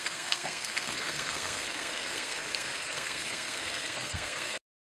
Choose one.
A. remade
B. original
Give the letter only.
A